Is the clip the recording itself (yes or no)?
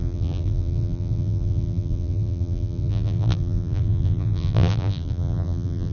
no